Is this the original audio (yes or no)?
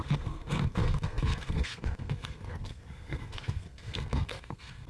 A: no